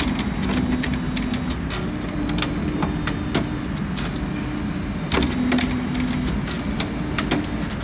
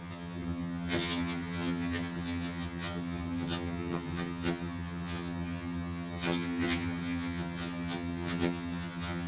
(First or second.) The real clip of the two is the first